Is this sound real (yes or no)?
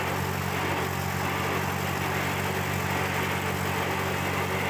yes